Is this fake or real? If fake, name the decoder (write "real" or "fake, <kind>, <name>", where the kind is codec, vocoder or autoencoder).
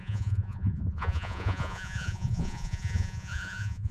fake, vocoder, Vocos